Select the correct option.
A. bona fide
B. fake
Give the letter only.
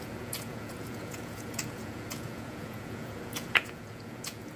B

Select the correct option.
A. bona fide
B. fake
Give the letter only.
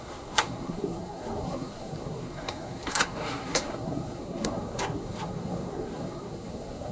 B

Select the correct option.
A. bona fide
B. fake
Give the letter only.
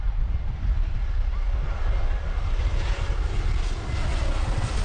A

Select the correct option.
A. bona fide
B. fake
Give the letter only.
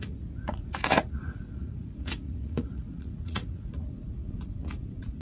B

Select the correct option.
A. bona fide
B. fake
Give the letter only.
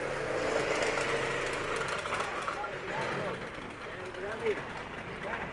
A